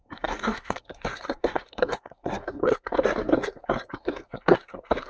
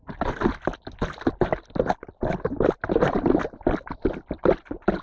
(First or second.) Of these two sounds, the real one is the second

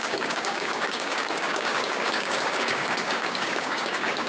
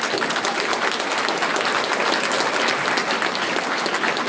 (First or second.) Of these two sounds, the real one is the second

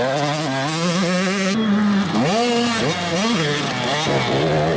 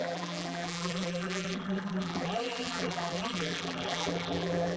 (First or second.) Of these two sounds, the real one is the first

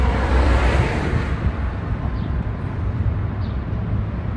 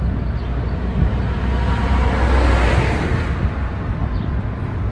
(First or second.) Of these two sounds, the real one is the second